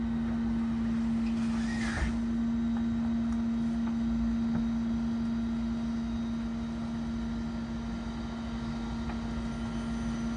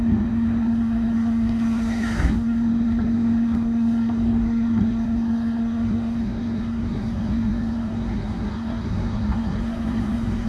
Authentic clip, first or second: first